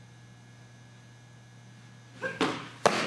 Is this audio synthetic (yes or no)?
no